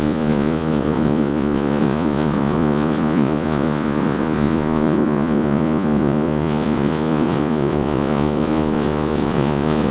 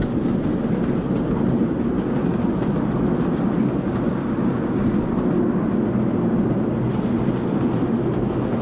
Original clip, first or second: second